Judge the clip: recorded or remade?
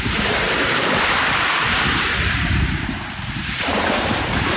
remade